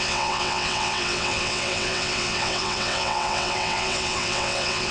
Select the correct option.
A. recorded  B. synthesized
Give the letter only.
B